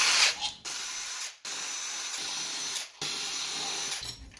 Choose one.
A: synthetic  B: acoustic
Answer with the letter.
B